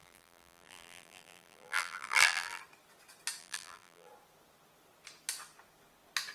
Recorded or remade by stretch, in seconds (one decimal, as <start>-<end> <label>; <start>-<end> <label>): 0.0-2.6 remade; 2.6-3.4 recorded; 3.4-4.1 remade; 4.1-6.3 recorded